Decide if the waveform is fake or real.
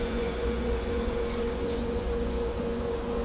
fake